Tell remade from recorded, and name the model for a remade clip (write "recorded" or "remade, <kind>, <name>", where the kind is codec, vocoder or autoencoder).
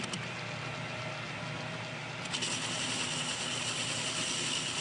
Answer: recorded